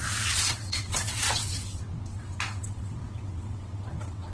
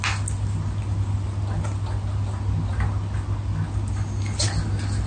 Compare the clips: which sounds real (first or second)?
second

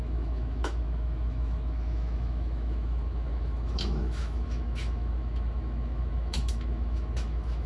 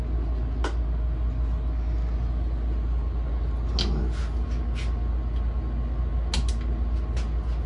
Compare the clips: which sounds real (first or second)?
second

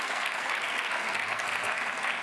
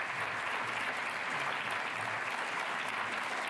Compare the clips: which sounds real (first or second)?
second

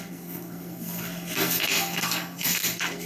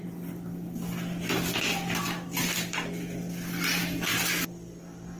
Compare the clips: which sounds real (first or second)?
second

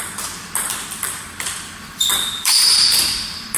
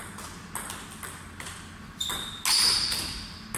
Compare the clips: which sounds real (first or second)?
second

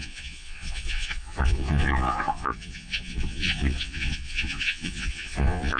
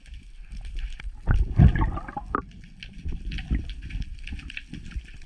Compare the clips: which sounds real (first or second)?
second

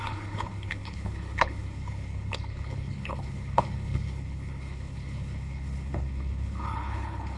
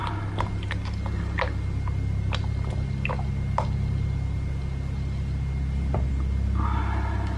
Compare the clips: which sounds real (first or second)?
second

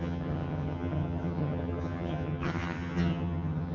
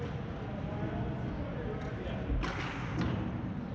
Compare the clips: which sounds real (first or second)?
second